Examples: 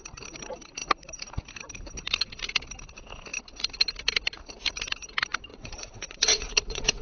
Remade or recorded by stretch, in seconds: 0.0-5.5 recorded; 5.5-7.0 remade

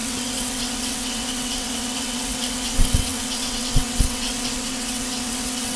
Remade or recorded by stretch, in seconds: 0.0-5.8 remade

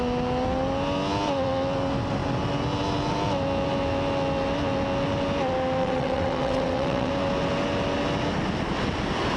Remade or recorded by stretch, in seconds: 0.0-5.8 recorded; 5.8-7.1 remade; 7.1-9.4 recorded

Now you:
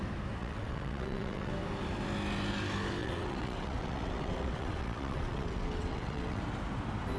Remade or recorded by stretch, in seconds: 0.0-0.4 recorded; 0.4-1.5 remade; 1.5-3.0 recorded; 3.0-6.4 remade; 6.4-7.2 recorded